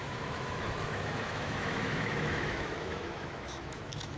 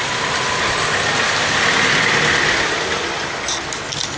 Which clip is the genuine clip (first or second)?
second